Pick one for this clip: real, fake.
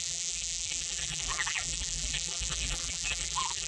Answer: fake